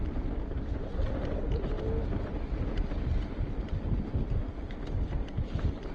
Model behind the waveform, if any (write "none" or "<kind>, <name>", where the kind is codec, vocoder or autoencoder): none